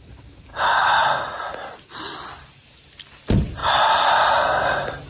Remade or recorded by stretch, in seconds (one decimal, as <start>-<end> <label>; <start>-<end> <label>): 0.0-5.1 recorded